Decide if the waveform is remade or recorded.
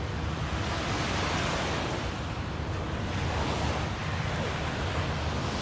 recorded